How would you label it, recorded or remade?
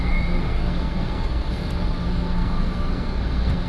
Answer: remade